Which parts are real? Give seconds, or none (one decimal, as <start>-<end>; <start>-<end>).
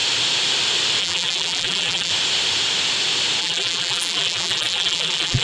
0.0-1.0; 2.1-3.4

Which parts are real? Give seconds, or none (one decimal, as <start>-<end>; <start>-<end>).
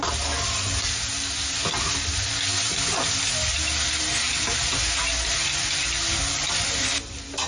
0.0-7.5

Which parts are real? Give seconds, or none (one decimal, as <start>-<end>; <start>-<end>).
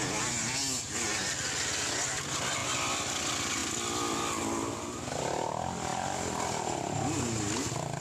0.0-8.0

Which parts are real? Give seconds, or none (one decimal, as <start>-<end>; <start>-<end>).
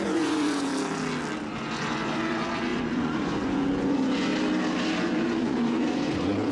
0.7-1.5; 4.3-5.0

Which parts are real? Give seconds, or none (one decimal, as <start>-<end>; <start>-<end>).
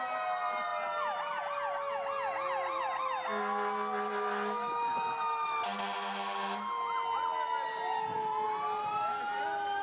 0.0-9.8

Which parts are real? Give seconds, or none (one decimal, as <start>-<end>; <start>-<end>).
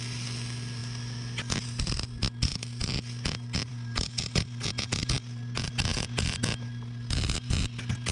0.0-8.1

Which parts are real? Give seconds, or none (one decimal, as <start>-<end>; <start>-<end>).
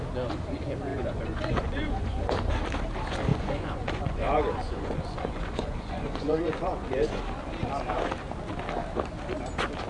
0.0-0.9; 2.3-3.3; 7.2-9.9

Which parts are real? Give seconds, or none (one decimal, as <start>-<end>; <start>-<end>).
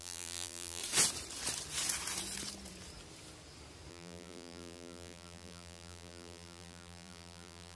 0.8-3.9